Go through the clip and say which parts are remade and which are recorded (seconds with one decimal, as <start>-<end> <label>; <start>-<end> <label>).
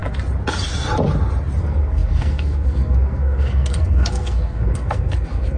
0.0-1.6 recorded; 1.6-5.6 remade